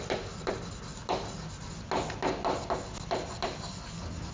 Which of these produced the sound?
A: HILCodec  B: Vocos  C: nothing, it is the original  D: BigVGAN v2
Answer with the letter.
C